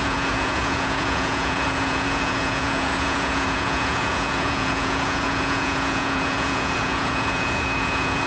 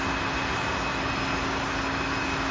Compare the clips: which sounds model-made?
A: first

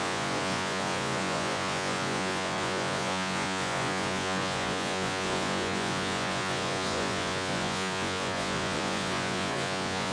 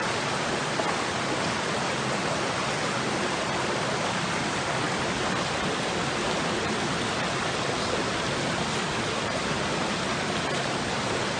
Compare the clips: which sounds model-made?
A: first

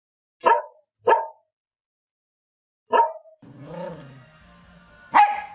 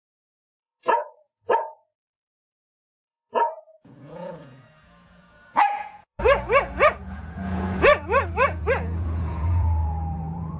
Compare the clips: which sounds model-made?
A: second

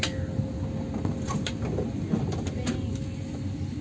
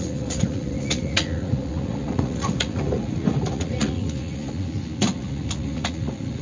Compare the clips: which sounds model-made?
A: second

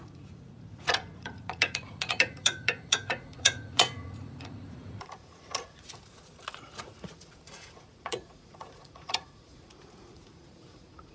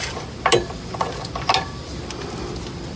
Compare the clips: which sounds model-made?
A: first